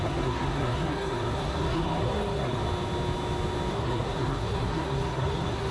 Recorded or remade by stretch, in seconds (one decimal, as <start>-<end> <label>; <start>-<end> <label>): 0.0-2.6 remade; 2.6-3.7 recorded; 3.7-5.7 remade